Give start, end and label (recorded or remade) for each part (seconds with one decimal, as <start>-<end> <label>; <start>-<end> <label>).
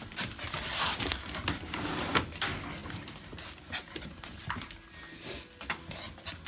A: 0.0-2.8 recorded; 2.8-4.4 remade; 4.4-6.5 recorded